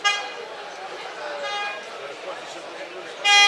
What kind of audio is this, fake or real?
real